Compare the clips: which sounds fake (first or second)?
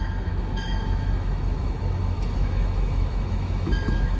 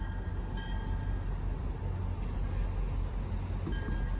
first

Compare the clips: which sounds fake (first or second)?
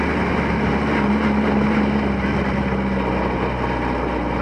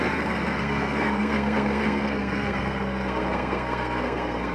second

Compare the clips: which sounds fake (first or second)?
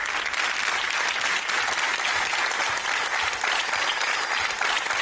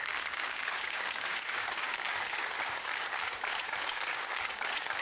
second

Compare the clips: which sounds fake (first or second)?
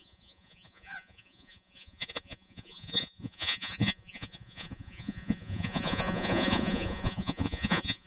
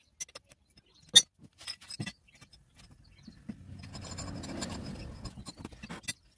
first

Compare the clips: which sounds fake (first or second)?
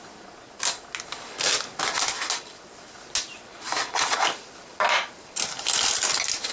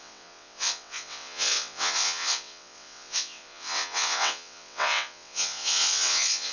second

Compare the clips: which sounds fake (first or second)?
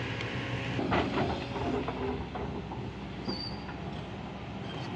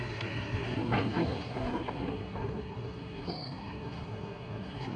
second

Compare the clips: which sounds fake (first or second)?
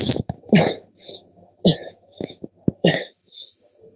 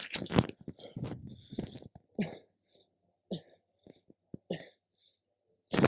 first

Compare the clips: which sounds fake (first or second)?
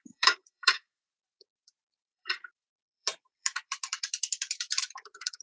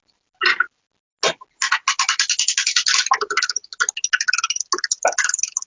first